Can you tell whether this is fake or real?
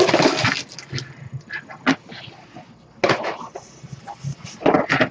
real